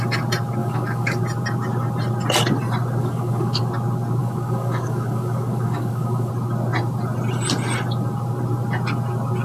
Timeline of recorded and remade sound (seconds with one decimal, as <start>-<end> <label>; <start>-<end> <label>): 0.0-0.6 recorded; 0.6-1.2 remade; 1.2-3.0 recorded; 3.0-3.6 remade; 3.6-4.2 recorded; 4.2-6.3 remade; 6.3-9.4 recorded